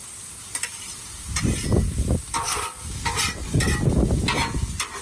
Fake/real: real